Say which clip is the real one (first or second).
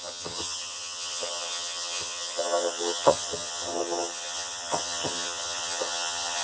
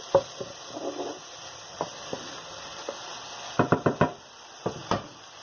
second